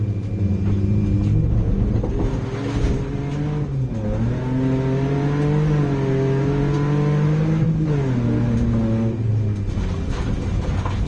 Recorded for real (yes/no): yes